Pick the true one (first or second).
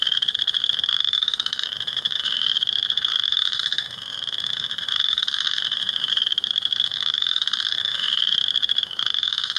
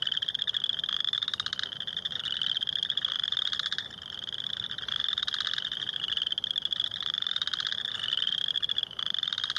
second